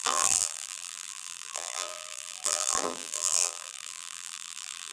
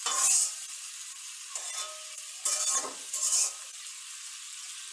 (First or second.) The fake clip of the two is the first